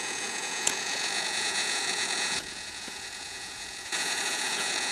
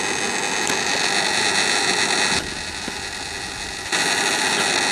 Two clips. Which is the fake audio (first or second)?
first